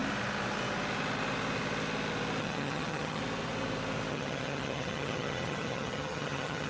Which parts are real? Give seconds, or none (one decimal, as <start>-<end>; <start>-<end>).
0.0-2.4; 3.2-4.1